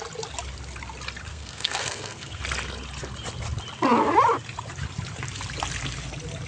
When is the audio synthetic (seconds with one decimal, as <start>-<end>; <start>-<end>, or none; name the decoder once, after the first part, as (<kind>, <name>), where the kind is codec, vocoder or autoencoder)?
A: 1.3-2.4 (codec, SNAC)